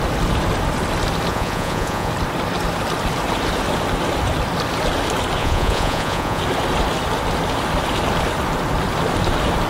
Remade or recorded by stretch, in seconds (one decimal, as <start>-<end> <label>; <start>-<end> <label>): 0.0-1.3 recorded; 1.3-2.1 remade; 2.1-5.4 recorded; 5.4-6.4 remade; 6.4-9.7 recorded